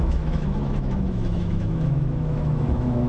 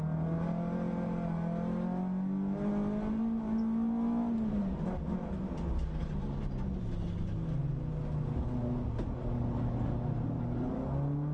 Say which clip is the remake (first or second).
first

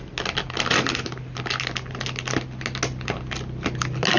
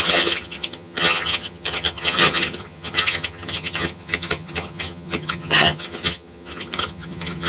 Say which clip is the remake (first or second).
second